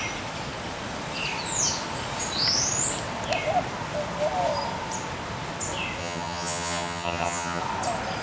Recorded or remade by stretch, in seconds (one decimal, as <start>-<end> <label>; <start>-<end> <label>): 0.0-6.0 recorded; 6.0-7.6 remade; 7.6-8.2 recorded